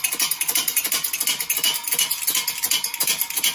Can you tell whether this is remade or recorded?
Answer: recorded